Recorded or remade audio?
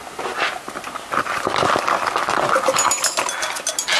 recorded